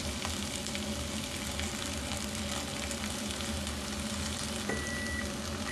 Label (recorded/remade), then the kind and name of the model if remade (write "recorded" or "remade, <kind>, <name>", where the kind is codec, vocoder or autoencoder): recorded